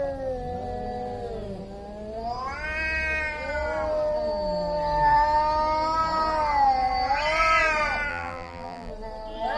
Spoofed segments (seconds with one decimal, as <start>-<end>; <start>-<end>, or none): 8.1-8.9